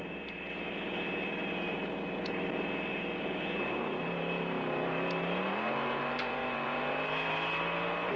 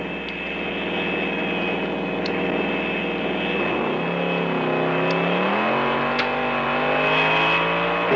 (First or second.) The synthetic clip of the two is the first